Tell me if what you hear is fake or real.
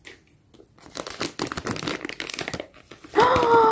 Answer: real